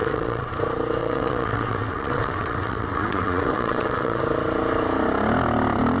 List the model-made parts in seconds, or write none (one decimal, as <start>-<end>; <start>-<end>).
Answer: 0.0-0.5; 1.0-4.2